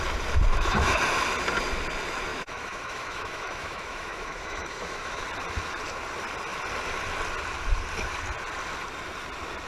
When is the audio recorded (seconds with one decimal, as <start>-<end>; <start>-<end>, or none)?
0.0-0.5; 1.0-2.3; 5.2-9.7